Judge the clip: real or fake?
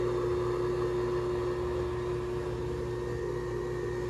real